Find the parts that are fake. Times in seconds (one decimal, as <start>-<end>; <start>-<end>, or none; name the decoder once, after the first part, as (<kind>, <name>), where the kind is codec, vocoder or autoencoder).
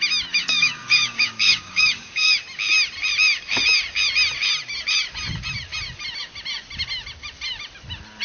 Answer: 0.4-2.4 (codec, DAC)